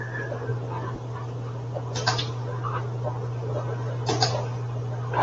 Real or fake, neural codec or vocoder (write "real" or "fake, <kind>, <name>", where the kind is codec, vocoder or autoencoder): real